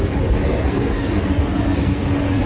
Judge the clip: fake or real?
fake